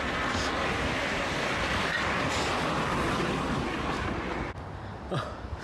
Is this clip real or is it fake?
real